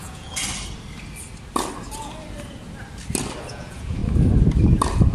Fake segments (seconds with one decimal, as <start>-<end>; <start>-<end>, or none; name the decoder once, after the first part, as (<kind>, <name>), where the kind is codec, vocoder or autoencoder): 0.0-0.4 (vocoder, Vocos); 3.5-4.0